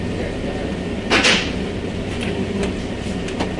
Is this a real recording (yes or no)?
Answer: yes